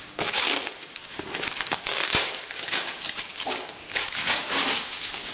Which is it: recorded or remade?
remade